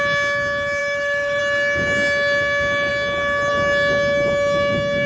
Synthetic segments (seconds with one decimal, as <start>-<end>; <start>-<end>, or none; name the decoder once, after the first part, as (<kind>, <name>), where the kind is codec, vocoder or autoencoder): 0.8-1.4 (autoencoder, DAC-VAE)